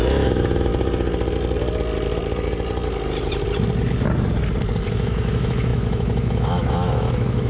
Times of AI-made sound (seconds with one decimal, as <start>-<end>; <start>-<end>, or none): 0.0-0.7; 4.9-7.5